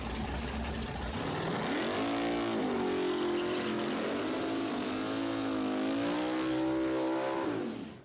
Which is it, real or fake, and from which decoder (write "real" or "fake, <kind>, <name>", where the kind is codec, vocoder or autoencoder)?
real